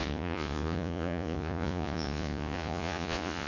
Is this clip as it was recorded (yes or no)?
no